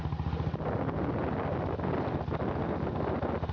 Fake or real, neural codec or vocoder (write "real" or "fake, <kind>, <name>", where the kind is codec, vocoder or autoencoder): real